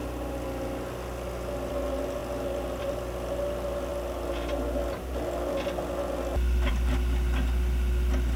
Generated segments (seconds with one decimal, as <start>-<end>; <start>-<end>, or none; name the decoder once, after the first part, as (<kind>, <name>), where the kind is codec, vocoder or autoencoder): none